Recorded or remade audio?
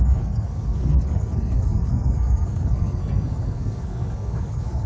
remade